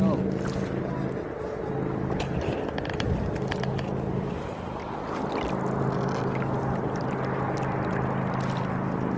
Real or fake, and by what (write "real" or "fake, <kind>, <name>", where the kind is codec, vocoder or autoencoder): real